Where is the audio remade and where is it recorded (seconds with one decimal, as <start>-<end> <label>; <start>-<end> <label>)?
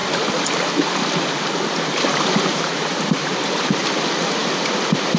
0.0-2.1 recorded; 2.1-3.8 remade; 3.8-5.2 recorded